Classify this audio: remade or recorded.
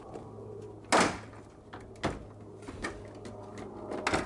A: recorded